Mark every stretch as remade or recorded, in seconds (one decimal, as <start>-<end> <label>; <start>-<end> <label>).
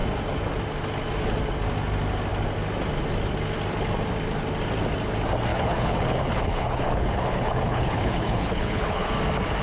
0.0-5.5 recorded; 5.5-9.1 remade; 9.1-9.6 recorded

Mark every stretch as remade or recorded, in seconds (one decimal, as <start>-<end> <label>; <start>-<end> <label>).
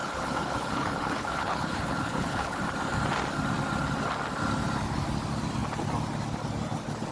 0.0-2.6 remade; 2.6-7.1 recorded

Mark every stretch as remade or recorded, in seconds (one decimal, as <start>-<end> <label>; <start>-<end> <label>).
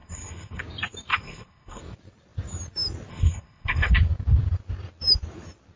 0.0-0.6 remade; 0.6-1.1 recorded; 1.1-1.8 remade; 1.8-3.1 recorded; 3.1-3.9 remade; 3.9-5.8 recorded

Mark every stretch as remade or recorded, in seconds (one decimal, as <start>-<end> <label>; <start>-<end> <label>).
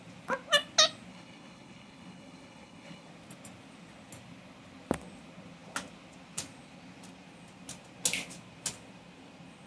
0.0-1.1 recorded; 1.1-3.1 remade; 3.1-9.7 recorded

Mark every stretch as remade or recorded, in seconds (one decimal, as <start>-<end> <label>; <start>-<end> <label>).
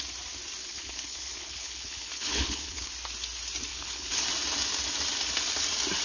0.0-0.6 recorded; 0.6-2.9 remade; 2.9-3.7 recorded; 3.7-4.2 remade; 4.2-6.0 recorded